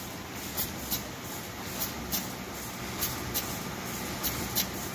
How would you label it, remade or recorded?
recorded